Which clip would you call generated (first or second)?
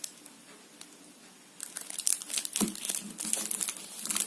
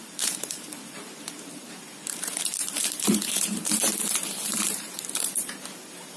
second